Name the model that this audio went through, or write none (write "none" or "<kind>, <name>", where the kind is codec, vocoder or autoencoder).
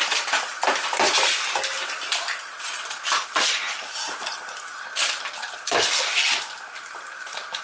none